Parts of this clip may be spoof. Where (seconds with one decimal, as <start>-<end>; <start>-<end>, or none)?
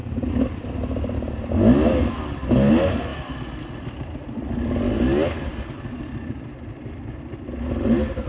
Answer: none